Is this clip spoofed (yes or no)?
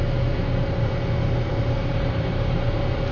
yes